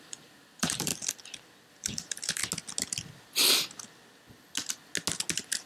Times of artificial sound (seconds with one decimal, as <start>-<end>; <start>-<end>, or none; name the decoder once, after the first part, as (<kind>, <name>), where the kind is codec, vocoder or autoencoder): 0.0-0.9 (vocoder, BigVGAN v2); 1.7-2.4